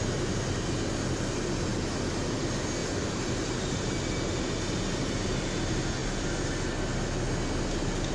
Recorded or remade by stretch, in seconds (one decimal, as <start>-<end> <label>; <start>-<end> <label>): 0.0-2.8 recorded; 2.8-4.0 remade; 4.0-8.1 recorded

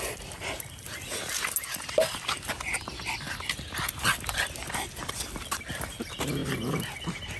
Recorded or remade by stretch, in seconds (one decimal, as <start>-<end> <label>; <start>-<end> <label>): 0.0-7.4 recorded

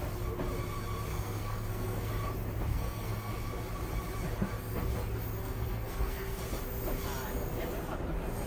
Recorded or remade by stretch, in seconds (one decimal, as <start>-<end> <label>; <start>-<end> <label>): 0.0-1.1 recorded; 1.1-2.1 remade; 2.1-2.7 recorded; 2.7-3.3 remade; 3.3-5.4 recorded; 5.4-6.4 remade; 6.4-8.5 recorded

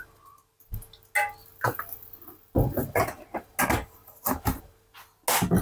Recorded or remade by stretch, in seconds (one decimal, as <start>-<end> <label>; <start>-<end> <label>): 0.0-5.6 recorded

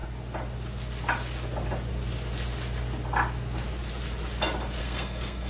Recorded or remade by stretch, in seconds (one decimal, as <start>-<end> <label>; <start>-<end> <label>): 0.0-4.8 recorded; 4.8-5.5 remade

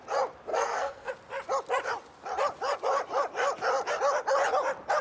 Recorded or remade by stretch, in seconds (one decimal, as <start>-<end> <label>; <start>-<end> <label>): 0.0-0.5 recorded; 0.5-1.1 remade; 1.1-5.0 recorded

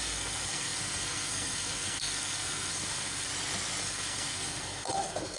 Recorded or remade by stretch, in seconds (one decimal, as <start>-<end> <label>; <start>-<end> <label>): 0.0-3.3 remade; 3.3-3.8 recorded; 3.8-5.4 remade

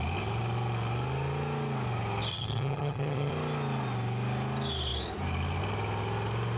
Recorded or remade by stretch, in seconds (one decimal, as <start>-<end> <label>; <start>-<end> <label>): 0.0-2.3 recorded; 2.3-3.3 remade; 3.3-6.6 recorded